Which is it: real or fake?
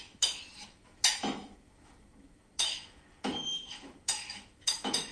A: fake